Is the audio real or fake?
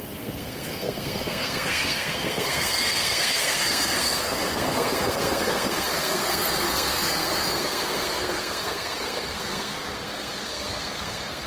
fake